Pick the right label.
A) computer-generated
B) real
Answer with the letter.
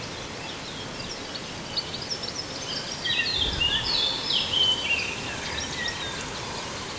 B